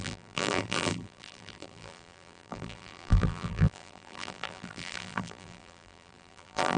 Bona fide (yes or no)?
no